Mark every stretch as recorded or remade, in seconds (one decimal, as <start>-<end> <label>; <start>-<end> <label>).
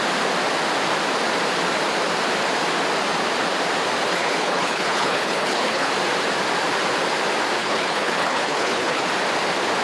0.0-4.1 recorded; 4.1-5.9 remade; 5.9-7.6 recorded; 7.6-9.1 remade; 9.1-9.8 recorded